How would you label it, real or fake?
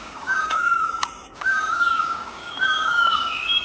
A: fake